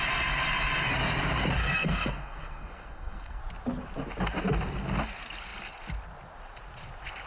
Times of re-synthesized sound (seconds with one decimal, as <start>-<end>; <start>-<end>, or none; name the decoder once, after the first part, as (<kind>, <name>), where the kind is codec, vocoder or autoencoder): 1.6-3.4 (codec, SNAC)